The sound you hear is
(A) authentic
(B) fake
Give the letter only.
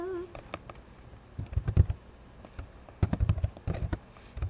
A